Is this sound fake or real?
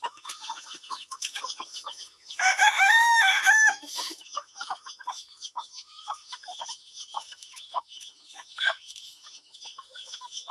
fake